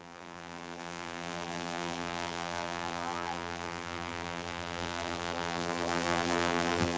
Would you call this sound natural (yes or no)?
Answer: no